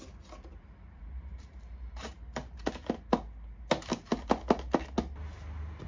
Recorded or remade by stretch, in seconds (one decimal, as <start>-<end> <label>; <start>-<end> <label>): 0.0-0.5 recorded; 0.5-2.7 remade; 2.7-5.9 recorded